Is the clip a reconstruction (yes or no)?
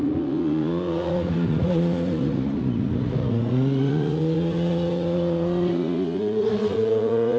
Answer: yes